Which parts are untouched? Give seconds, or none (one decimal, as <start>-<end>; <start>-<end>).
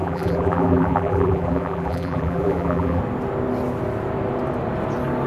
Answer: 3.0-5.3